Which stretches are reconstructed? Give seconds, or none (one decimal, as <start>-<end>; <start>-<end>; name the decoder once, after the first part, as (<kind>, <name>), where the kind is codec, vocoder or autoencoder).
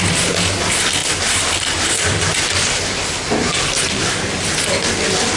none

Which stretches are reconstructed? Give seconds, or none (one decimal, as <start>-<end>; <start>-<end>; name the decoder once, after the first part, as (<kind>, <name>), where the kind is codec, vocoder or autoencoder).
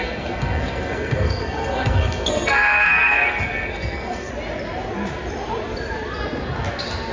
0.0-4.3 (codec, SNAC)